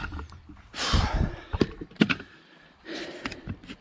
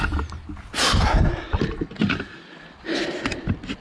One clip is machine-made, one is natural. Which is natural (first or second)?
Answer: second